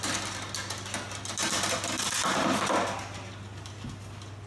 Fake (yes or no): no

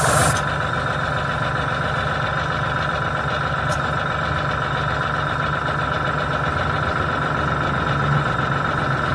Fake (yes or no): yes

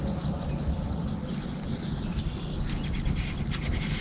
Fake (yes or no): no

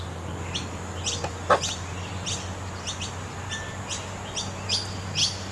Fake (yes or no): no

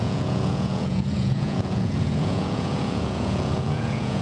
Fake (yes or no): yes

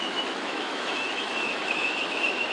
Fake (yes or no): yes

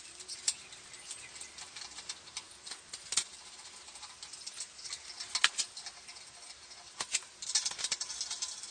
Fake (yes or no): no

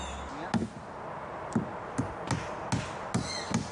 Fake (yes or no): no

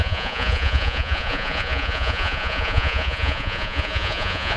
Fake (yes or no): yes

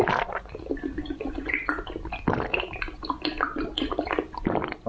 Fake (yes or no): no